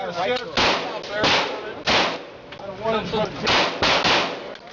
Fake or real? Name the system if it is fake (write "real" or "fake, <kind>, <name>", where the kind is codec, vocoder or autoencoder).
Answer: real